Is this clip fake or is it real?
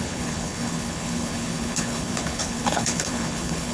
fake